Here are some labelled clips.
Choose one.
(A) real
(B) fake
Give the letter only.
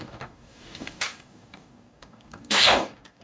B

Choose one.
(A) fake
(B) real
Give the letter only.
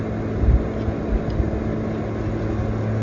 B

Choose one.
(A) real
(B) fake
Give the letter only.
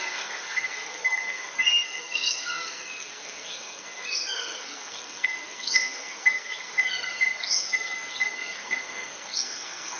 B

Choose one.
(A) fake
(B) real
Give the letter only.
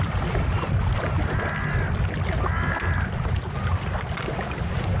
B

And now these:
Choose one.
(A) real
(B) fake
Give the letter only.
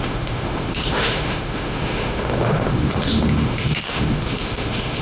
B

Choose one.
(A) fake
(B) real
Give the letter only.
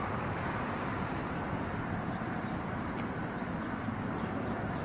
A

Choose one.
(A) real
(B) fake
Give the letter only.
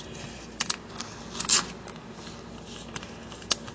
A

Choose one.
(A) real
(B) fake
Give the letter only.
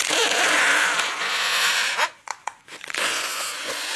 B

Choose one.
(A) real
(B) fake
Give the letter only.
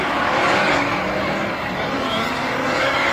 B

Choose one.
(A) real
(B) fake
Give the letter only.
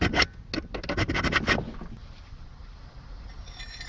A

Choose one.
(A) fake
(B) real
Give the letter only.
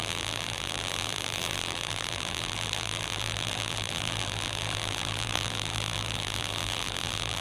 A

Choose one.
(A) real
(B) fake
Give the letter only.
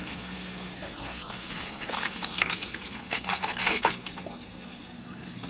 B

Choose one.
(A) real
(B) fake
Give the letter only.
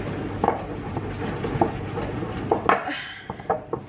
A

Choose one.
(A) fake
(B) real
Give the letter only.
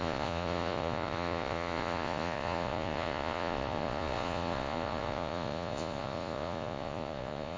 A